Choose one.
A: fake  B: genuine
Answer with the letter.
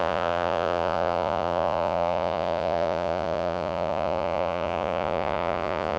A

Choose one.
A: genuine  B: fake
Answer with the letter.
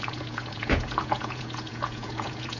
B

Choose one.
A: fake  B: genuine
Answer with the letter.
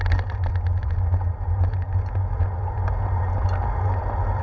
B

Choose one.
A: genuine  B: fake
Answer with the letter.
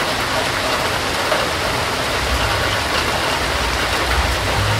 A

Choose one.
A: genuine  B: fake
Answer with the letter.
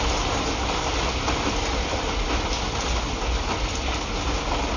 A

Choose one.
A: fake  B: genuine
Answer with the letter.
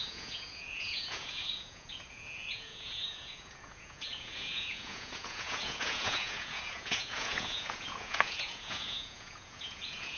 A